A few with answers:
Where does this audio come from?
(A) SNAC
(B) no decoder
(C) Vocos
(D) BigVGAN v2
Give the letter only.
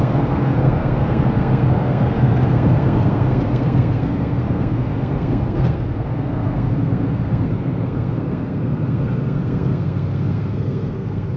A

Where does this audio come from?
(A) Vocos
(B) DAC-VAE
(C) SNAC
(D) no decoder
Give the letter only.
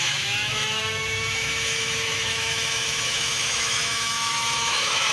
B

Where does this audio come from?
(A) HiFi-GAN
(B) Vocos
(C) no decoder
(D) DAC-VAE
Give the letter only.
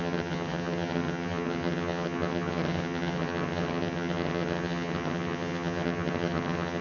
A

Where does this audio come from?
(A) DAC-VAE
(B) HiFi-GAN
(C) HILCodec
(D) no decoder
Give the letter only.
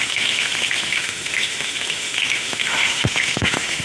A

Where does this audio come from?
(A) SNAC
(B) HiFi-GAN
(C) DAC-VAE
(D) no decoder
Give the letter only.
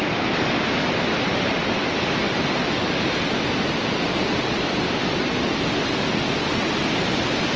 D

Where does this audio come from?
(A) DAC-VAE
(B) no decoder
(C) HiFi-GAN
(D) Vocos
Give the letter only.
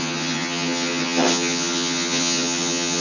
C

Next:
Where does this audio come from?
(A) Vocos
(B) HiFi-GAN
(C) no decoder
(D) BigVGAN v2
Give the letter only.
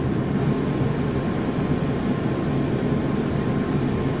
C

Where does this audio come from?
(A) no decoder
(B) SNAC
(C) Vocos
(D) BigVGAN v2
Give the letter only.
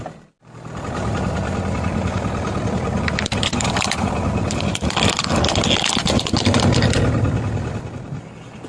A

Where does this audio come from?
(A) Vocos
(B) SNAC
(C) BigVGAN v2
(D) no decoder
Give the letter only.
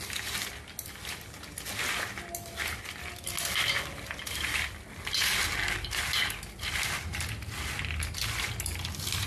D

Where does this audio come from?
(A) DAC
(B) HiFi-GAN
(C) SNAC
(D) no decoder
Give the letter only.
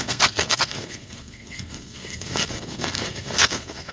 C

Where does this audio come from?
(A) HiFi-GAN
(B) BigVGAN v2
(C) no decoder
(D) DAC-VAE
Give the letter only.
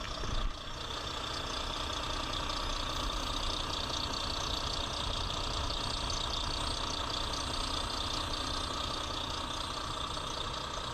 C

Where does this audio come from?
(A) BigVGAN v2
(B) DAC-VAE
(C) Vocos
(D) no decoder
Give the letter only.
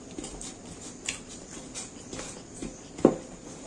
D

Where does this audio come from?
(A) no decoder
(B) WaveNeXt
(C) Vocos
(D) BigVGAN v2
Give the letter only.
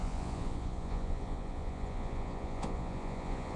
C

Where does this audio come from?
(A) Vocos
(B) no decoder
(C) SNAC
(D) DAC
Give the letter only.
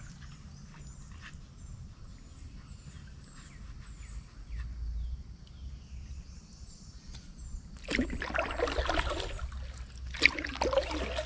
B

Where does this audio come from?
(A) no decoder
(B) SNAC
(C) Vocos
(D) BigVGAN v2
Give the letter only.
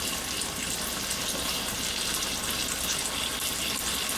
A